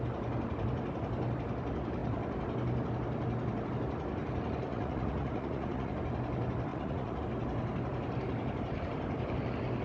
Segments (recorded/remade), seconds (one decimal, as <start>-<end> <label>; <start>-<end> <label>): 0.0-4.7 recorded; 4.7-5.9 remade; 5.9-6.7 recorded; 6.7-7.2 remade; 7.2-9.8 recorded